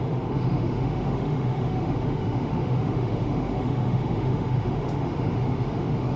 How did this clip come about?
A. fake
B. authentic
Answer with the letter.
A